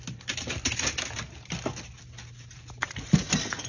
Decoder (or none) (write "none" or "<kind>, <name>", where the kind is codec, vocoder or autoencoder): none